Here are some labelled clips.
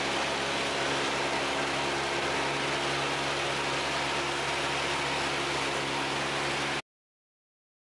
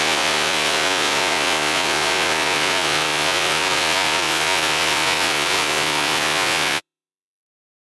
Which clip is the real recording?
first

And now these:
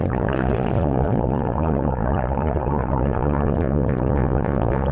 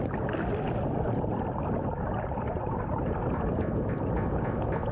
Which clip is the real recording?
second